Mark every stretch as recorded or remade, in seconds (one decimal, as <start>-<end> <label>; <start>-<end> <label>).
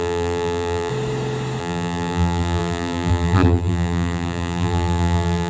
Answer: 0.0-0.9 remade; 0.9-1.6 recorded; 1.6-5.5 remade